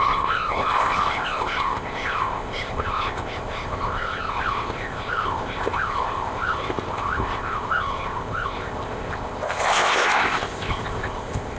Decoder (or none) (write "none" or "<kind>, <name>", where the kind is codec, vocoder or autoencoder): codec, ZipCodec